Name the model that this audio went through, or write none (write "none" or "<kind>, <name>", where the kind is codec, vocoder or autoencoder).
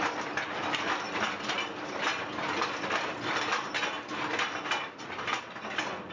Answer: none